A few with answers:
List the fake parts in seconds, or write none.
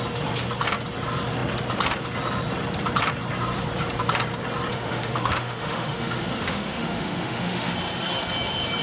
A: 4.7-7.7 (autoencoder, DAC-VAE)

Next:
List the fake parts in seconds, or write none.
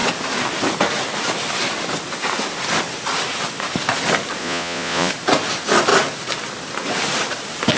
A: 4.4-5.1 (vocoder, Vocos)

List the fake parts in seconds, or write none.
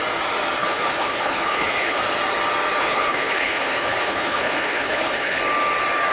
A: 0.6-2.0 (codec, HILCodec); 2.8-5.4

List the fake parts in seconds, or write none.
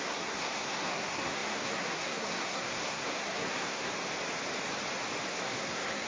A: 0.0-3.9 (codec, SNAC); 5.3-6.1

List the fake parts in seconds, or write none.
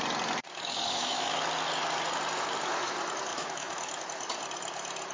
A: 0.4-1.4 (autoencoder, DAC-VAE); 3.3-4.0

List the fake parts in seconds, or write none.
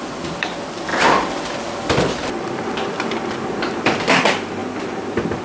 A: 0.0-4.6 (vocoder, BigVGAN v2)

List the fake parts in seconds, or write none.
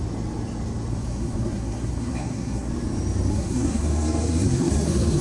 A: 0.9-2.7 (codec, SNAC); 3.3-5.2